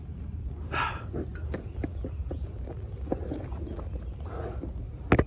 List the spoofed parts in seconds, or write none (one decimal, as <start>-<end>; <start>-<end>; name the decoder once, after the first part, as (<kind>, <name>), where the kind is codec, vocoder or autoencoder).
none